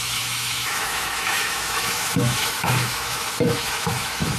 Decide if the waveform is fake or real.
fake